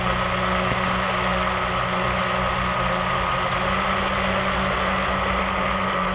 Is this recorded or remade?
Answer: recorded